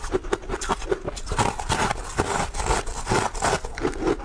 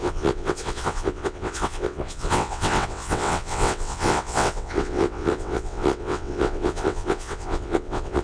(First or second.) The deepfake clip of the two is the second